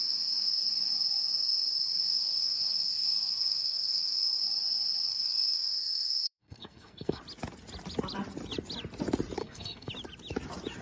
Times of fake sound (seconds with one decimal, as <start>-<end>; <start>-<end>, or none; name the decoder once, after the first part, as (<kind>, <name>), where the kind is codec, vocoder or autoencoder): 2.1-4.4 (codec, SNAC); 5.1-7.2; 9.4-9.9